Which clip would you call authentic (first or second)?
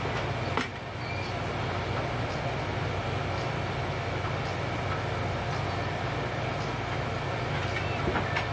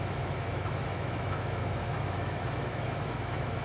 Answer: first